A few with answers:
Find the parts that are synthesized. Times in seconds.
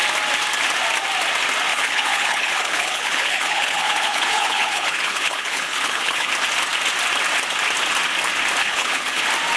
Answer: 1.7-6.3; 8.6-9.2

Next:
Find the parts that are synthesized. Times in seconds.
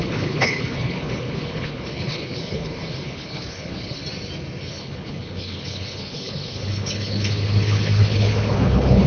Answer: 0.0-4.0; 4.6-9.1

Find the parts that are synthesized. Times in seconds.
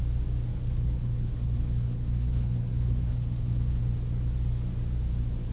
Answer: 0.5-3.8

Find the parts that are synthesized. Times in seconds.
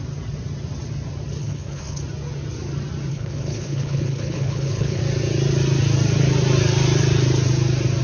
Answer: 1.4-2.0; 3.1-5.0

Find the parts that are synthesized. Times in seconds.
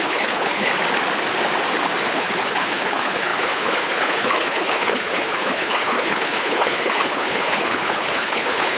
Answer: 0.0-0.7; 2.1-8.8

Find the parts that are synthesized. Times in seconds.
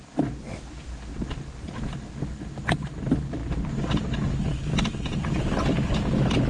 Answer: none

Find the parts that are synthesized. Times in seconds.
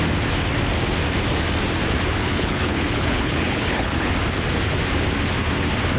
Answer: 2.2-4.1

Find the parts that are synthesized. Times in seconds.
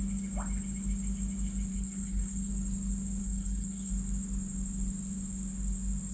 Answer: 1.7-2.5; 3.2-3.9